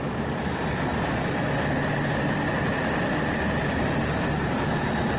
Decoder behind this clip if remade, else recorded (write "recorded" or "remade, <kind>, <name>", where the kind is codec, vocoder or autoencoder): recorded